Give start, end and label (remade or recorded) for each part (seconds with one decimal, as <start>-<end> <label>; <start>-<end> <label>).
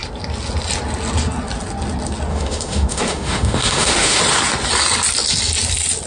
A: 0.0-2.3 recorded; 2.3-4.2 remade; 4.2-6.1 recorded